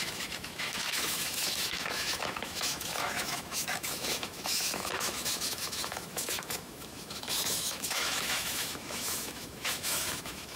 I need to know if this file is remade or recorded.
remade